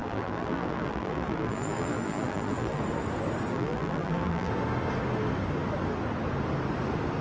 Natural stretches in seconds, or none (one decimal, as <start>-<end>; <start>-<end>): 2.8-3.5; 4.5-7.2

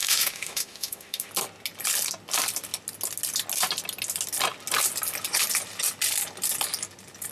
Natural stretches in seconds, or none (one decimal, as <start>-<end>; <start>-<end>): 1.3-7.3

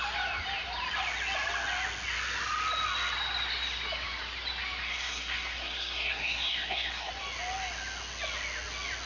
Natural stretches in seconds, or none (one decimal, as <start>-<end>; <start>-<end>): 0.0-4.8; 7.1-9.1

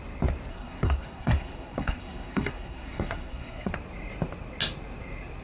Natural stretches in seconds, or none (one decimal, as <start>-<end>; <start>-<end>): 0.0-0.5; 3.7-5.4

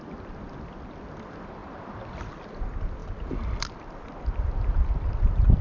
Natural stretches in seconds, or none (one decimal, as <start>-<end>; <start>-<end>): 0.0-5.6